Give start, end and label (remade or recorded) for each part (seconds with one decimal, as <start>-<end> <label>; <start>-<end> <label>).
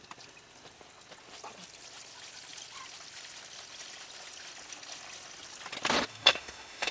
0.0-6.1 recorded; 6.1-6.9 remade